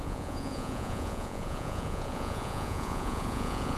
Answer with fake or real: fake